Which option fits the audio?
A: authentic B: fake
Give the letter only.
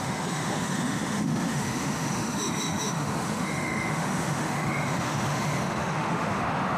B